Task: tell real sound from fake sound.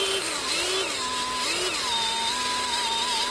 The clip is real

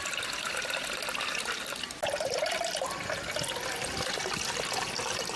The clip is real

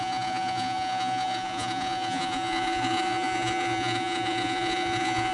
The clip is fake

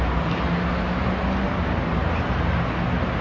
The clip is real